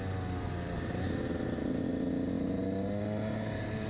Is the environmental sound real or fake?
real